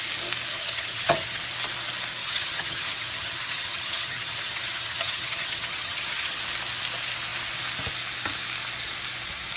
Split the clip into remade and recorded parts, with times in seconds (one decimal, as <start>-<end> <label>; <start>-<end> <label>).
0.0-0.5 recorded; 0.5-1.4 remade; 1.4-2.2 recorded; 2.2-6.4 remade; 6.4-9.6 recorded